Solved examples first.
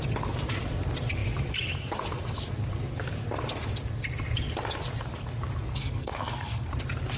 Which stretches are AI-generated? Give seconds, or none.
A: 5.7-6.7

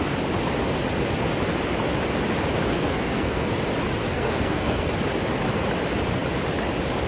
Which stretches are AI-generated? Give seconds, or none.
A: 2.7-3.5; 4.1-4.9

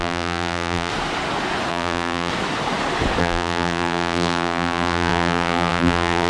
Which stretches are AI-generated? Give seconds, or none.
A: 0.0-0.9; 1.7-2.3; 3.2-6.3